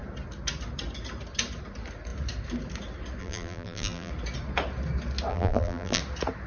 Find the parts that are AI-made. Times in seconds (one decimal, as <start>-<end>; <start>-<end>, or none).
3.2-4.1; 5.3-6.0